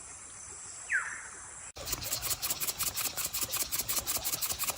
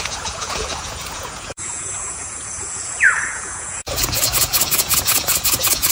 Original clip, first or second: first